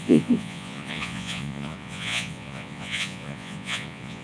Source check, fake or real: fake